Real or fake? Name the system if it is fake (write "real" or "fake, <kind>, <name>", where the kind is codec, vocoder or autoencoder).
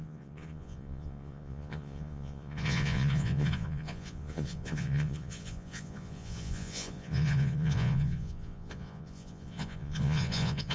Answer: fake, vocoder, Vocos